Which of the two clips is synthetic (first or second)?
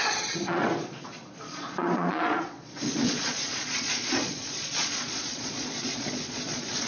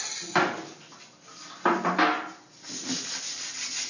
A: first